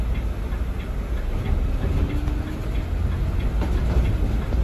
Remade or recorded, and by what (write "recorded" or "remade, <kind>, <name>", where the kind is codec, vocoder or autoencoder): recorded